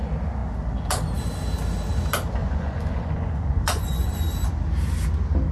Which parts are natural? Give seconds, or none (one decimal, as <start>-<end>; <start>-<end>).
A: 0.0-2.4; 4.1-5.5